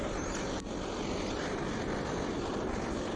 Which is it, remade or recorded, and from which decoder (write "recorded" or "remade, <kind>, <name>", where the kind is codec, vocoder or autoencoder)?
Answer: recorded